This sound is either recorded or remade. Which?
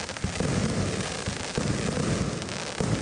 recorded